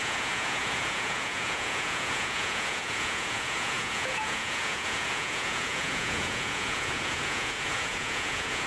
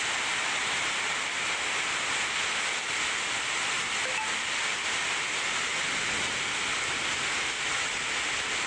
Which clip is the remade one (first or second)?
first